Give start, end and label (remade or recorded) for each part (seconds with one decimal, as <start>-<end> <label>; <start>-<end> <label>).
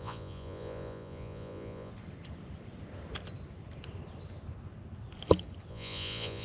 0.0-1.9 remade; 1.9-5.7 recorded; 5.7-6.4 remade